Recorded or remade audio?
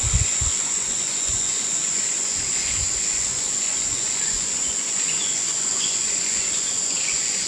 remade